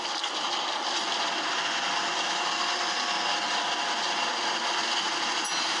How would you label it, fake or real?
real